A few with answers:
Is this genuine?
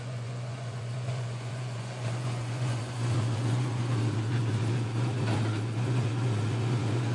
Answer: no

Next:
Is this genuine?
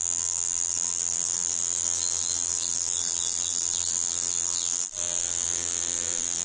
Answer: no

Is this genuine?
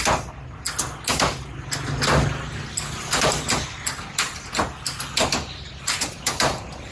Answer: yes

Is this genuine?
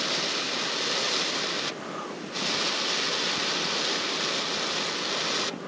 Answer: yes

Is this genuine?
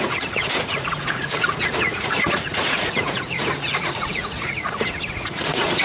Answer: no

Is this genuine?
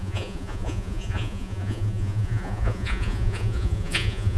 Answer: no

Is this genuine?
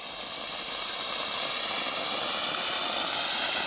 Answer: yes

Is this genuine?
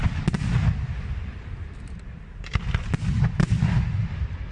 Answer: yes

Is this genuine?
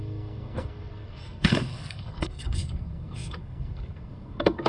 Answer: no